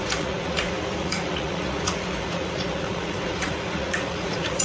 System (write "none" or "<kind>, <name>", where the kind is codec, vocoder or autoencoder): vocoder, Vocos